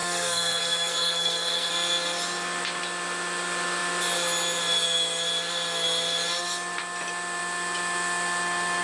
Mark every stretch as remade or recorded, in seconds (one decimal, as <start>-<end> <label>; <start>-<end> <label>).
0.0-1.7 remade; 1.7-8.8 recorded